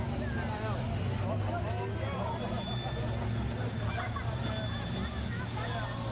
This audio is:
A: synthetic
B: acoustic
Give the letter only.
B